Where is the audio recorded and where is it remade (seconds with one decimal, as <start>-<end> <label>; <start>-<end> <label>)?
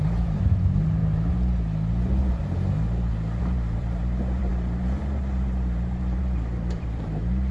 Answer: 0.0-1.0 remade; 1.0-3.4 recorded; 3.4-7.5 remade